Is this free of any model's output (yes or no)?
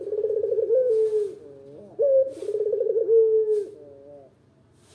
yes